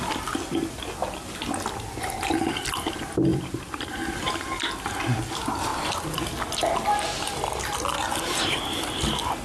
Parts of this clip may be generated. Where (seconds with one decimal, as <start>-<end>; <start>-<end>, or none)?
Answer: 3.3-3.9